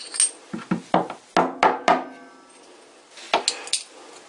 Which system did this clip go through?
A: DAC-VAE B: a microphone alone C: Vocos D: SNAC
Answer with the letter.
B